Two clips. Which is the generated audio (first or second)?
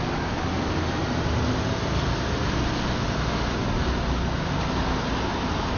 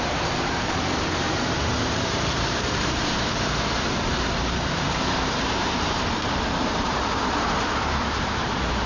second